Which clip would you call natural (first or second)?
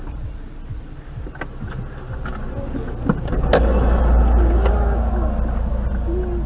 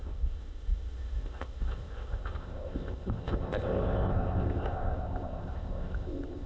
first